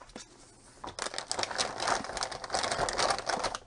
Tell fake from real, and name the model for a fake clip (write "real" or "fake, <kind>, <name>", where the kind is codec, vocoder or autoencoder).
real